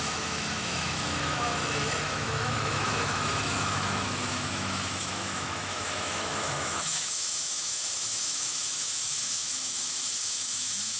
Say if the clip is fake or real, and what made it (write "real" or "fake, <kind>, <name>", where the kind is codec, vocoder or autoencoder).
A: fake, autoencoder, DAC-VAE